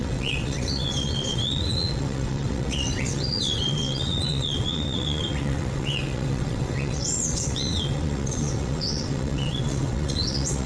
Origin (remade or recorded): remade